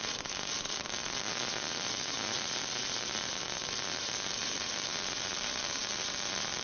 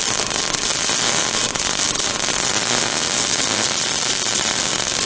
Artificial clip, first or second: first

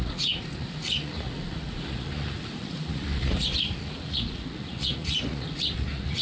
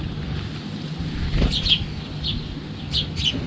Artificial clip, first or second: first